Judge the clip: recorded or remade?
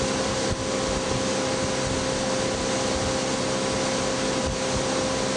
recorded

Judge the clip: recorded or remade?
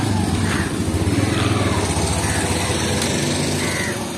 recorded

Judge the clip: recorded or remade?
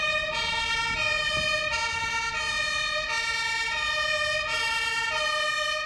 recorded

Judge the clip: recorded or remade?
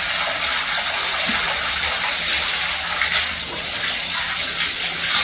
recorded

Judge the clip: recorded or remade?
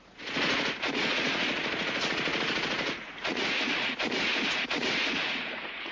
remade